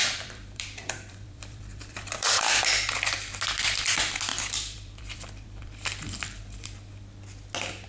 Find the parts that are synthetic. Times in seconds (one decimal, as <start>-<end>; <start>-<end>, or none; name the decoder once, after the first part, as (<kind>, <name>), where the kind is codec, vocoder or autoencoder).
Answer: 0.0-2.6 (vocoder, BigVGAN v2); 4.3-6.4